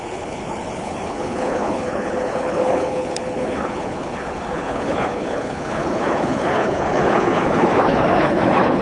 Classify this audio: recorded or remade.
remade